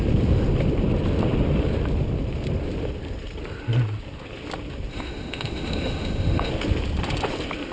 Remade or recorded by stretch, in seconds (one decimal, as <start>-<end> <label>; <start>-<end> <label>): 0.0-4.9 recorded; 4.9-6.5 remade; 6.5-7.7 recorded